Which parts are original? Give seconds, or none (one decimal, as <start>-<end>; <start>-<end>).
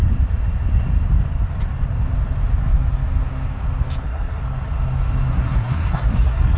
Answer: 0.0-4.0; 4.4-5.3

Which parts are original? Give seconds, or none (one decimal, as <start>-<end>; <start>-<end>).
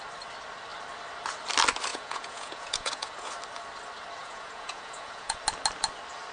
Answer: 0.0-1.9; 3.3-4.2; 5.4-6.3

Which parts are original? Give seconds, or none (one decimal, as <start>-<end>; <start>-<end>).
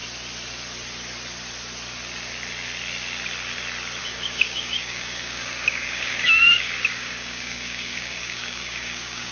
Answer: 0.0-4.0